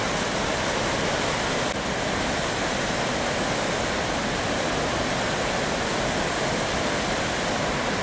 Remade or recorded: recorded